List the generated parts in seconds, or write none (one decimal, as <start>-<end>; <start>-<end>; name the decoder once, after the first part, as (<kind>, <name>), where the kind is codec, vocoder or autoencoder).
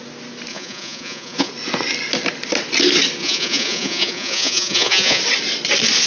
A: 0.5-1.5 (vocoder, Vocos); 3.2-5.2